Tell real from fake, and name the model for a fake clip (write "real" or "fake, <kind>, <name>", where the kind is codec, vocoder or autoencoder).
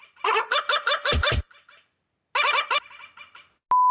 real